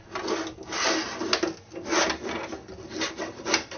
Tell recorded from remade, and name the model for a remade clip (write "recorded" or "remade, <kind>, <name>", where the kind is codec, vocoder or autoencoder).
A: recorded